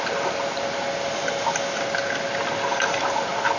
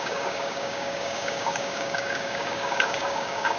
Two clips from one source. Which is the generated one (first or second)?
second